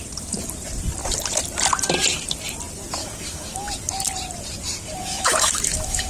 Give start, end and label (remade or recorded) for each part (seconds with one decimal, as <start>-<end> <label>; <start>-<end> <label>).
0.0-3.0 recorded; 3.0-3.7 remade; 3.7-5.0 recorded; 5.0-6.1 remade